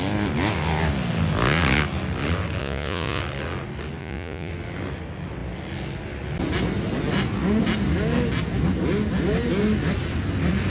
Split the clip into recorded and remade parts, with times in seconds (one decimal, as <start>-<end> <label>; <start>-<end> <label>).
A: 0.0-2.6 recorded; 2.6-3.2 remade; 3.2-4.0 recorded; 4.0-4.5 remade; 4.5-10.7 recorded